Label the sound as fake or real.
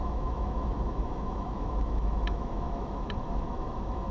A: fake